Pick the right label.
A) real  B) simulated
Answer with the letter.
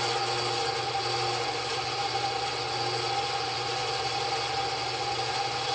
A